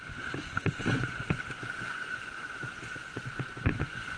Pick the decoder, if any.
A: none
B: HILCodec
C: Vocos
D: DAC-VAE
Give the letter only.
C